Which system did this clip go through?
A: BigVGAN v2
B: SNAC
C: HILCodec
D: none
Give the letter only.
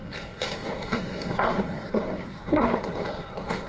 B